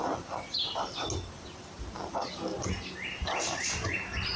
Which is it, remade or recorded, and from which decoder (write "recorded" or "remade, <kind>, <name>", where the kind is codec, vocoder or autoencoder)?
recorded